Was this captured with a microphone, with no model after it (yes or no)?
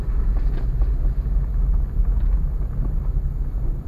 yes